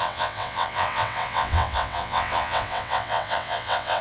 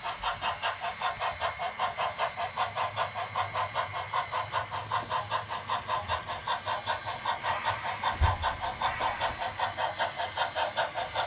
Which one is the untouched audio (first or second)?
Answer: second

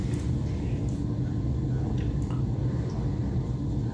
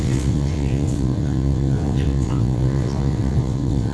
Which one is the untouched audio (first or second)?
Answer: first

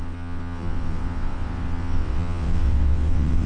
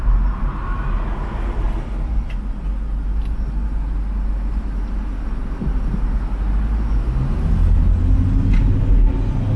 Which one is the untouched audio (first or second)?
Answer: second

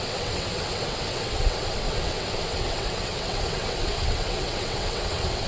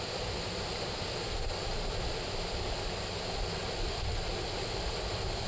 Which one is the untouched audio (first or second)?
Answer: second